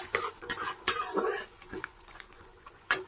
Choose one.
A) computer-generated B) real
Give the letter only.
A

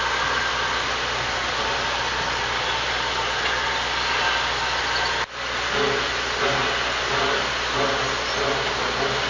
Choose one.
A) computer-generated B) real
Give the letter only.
B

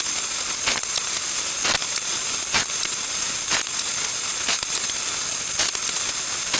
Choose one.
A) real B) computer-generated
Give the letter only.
A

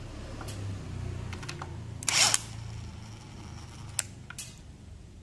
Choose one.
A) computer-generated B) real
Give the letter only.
B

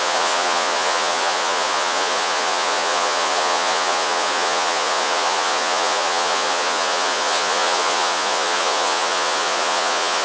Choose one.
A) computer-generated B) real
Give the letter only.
A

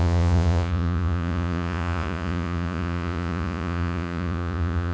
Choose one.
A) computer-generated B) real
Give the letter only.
A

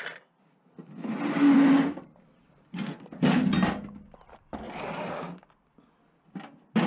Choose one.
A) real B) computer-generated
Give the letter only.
A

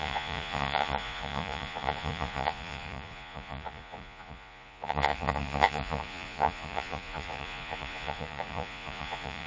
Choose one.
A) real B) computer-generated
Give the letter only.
B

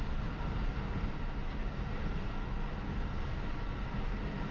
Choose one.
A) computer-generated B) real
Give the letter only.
B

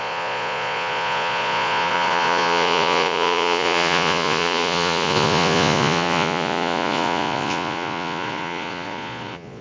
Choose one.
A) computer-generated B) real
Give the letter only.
A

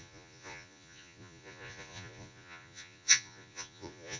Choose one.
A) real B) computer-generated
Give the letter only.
B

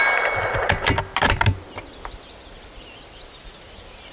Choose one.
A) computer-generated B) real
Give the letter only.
B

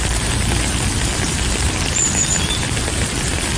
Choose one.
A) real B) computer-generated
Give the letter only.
A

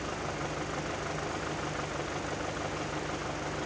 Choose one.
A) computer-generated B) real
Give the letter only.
B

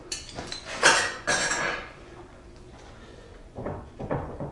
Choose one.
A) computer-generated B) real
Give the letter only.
A